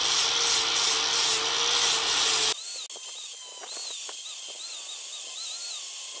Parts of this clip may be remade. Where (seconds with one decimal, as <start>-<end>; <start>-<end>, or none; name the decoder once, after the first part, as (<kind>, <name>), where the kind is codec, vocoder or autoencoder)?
5.1-6.2 (vocoder, BigVGAN v2)